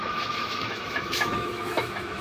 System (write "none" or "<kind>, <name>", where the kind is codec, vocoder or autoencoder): autoencoder, DAC-VAE